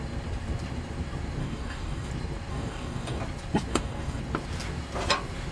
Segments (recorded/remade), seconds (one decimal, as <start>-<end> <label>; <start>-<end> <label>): 0.0-1.4 recorded; 1.4-2.1 remade; 2.1-2.5 recorded; 2.5-3.2 remade; 3.2-3.7 recorded; 3.7-4.2 remade; 4.2-5.5 recorded